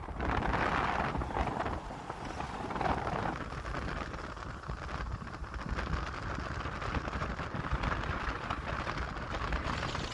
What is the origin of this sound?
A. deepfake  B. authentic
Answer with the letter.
B